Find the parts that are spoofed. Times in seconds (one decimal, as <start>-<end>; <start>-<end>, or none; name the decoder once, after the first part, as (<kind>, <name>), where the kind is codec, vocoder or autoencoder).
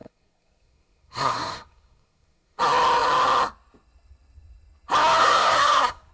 0.0-2.6 (codec, SNAC); 5.2-6.1